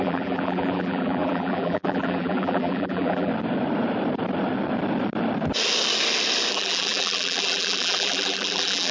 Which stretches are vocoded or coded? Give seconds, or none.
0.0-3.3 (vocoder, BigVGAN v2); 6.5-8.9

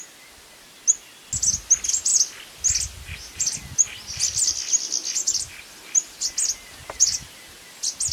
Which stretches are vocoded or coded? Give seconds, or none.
none

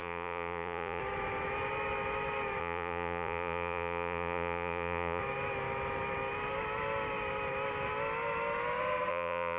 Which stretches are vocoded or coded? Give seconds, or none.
0.0-1.0 (vocoder, Vocos); 2.6-5.2; 9.1-9.6

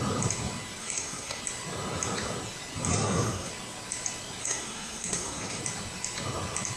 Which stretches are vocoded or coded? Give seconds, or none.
0.8-1.4 (codec, SNAC); 2.9-3.5; 4.4-5.6

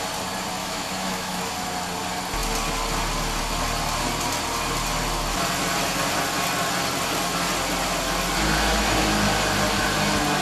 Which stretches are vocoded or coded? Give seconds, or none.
0.6-1.4 (autoencoder, DAC-VAE)

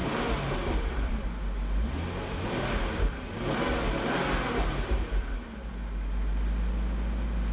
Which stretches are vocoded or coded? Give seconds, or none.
none

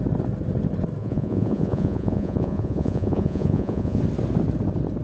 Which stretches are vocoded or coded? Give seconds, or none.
1.0-4.0 (vocoder, Vocos)

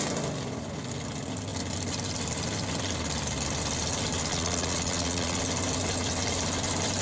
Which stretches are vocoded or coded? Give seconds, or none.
4.3-5.4 (vocoder, Vocos)